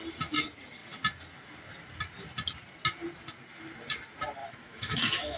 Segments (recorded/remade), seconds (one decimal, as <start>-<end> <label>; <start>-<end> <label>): 0.0-4.4 recorded; 4.4-5.4 remade

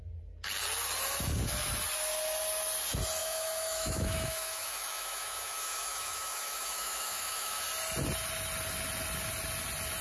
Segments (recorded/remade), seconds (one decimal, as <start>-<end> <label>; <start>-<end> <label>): 0.0-3.2 recorded; 3.2-7.6 remade; 7.6-10.0 recorded